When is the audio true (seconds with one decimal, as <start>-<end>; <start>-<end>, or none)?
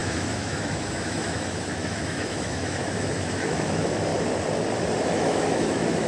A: 4.1-5.0